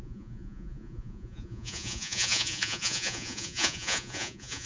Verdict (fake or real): fake